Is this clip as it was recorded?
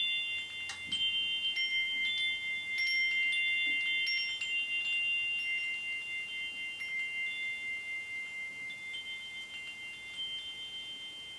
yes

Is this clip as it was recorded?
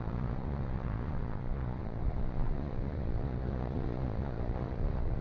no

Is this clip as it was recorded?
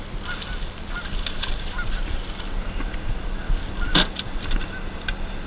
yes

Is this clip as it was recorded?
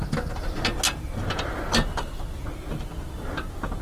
yes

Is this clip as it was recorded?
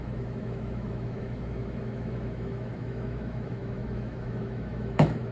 no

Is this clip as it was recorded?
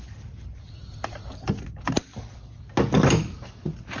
yes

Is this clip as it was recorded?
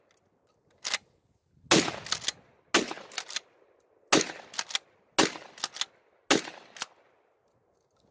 yes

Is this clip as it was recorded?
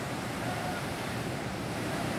no